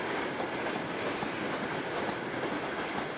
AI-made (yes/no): no